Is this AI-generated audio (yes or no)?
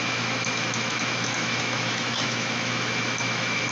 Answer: yes